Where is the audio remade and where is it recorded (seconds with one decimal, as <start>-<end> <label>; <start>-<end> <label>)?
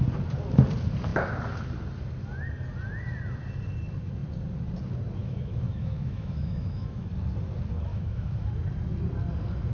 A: 0.0-5.2 recorded; 5.2-7.1 remade; 7.1-7.9 recorded; 7.9-8.5 remade; 8.5-9.7 recorded